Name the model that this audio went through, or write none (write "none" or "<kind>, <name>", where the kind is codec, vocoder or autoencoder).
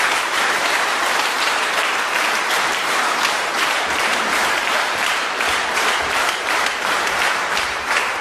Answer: vocoder, BigVGAN v2